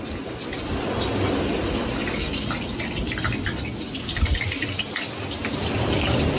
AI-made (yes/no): no